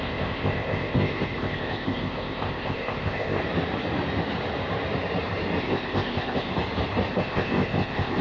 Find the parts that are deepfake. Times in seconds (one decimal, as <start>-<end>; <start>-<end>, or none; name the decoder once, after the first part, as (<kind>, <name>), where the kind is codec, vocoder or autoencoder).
0.0-3.4 (codec, ZipCodec); 5.6-6.5; 7.1-8.2